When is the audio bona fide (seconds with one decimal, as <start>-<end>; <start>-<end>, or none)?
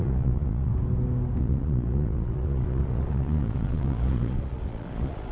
0.7-1.4